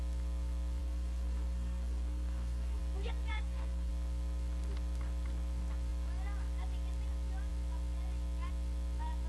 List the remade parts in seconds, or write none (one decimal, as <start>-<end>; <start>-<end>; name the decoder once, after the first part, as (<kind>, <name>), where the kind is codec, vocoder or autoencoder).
0.8-2.8 (codec, SNAC); 3.3-3.9